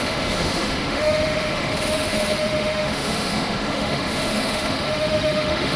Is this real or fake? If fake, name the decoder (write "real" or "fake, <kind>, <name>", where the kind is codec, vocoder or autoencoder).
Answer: fake, autoencoder, DAC-VAE